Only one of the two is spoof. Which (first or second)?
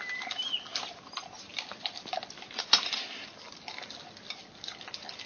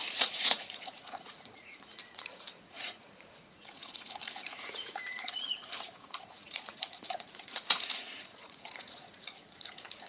second